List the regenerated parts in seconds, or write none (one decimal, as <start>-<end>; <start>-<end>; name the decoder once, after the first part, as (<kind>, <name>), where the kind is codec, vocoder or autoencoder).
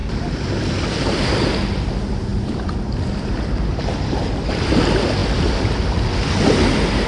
0.0-1.3 (vocoder, BigVGAN v2); 2.3-4.3; 5.2-5.9